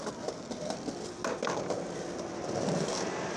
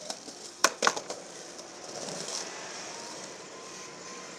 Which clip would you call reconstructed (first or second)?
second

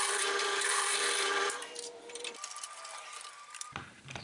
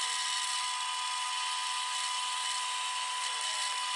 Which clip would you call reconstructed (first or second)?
first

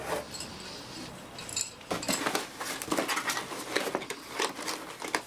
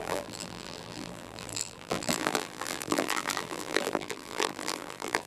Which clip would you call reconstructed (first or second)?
second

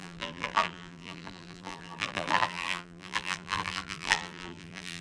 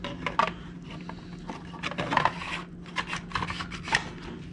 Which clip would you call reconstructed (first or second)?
first